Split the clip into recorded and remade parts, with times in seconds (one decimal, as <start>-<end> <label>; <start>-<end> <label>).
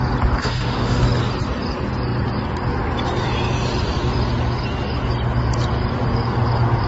0.0-0.4 recorded; 0.4-1.0 remade; 1.0-6.9 recorded